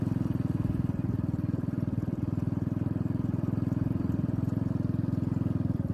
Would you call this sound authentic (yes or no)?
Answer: yes